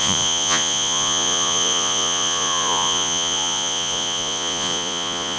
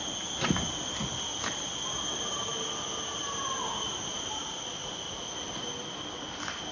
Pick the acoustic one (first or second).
second